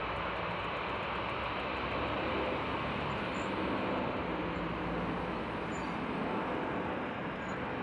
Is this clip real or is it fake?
real